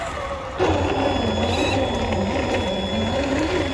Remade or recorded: recorded